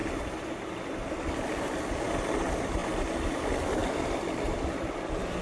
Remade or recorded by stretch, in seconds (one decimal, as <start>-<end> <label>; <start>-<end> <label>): 0.0-5.4 recorded